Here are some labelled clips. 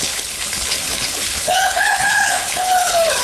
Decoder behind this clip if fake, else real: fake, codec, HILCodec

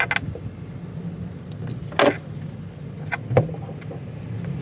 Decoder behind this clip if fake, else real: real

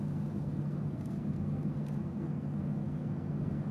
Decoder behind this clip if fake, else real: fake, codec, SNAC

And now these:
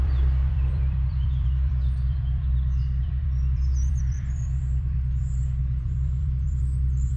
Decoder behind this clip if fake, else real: fake, vocoder, BigVGAN v2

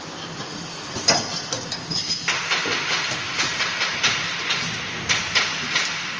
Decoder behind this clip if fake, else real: real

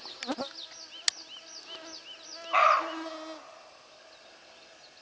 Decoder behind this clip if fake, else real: real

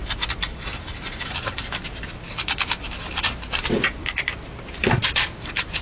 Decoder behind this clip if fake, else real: fake, vocoder, BigVGAN v2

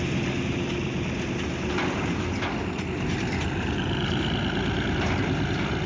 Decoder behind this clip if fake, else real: real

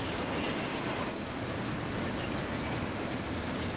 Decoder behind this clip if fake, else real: real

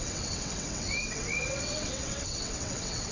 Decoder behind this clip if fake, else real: fake, vocoder, WaveNeXt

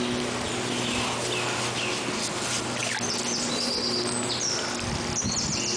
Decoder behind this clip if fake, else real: real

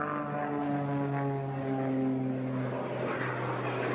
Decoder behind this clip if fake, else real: real